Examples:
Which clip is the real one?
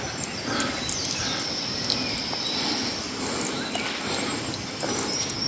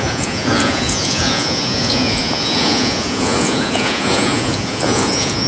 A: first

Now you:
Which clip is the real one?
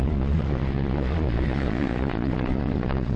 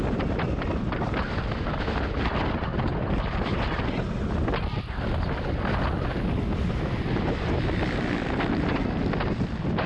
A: second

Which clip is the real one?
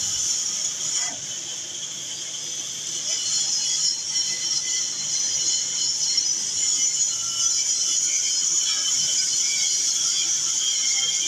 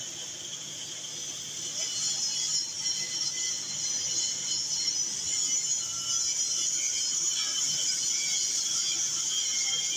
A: second